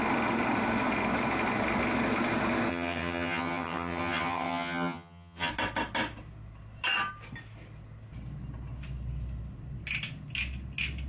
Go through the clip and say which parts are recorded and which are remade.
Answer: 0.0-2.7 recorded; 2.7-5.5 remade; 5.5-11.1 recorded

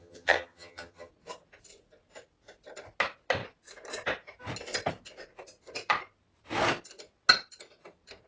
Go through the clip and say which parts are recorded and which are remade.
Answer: 0.0-1.1 remade; 1.1-8.3 recorded

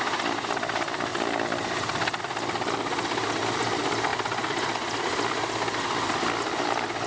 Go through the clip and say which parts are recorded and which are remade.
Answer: 0.0-7.1 recorded

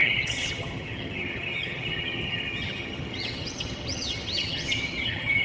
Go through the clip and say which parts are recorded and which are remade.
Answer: 0.0-5.4 remade